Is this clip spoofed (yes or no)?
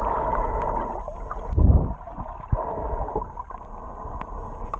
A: no